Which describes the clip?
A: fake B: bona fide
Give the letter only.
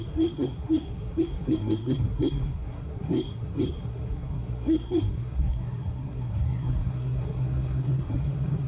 A